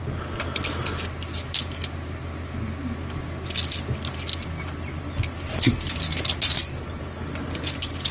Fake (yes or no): no